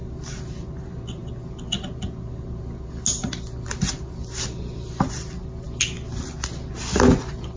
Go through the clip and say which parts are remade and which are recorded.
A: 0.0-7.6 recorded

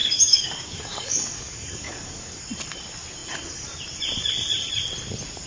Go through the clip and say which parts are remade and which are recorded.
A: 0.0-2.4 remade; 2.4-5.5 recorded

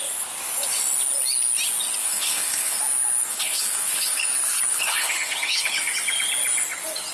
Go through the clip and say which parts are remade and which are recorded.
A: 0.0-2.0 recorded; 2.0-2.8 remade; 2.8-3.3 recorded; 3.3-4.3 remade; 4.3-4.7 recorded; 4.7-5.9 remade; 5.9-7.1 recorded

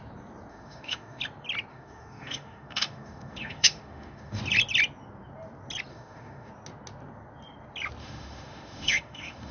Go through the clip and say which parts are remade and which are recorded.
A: 0.0-0.5 recorded; 0.5-1.2 remade; 1.2-1.7 recorded; 1.7-4.4 remade; 4.4-5.9 recorded; 5.9-6.5 remade; 6.5-8.0 recorded; 8.0-9.5 remade

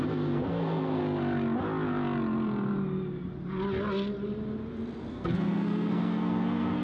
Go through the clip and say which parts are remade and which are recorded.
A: 0.0-1.0 remade; 1.0-5.1 recorded; 5.1-6.8 remade

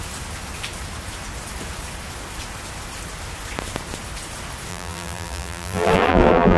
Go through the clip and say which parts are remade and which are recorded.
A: 0.0-4.7 recorded; 4.7-6.6 remade

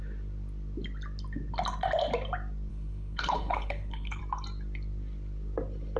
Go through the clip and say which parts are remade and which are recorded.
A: 0.0-2.7 recorded; 2.7-4.2 remade; 4.2-6.0 recorded